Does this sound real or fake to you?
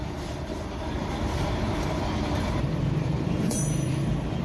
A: fake